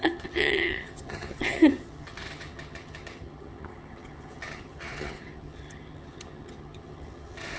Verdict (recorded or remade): remade